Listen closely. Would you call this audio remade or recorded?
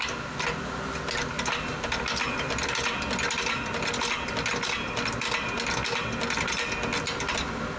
recorded